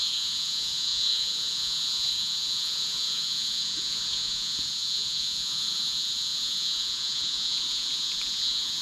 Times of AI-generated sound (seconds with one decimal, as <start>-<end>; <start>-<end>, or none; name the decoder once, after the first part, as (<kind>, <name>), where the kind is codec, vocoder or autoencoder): 0.0-8.8 (vocoder, Vocos)